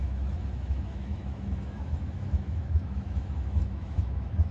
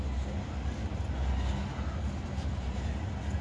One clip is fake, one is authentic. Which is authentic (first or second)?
second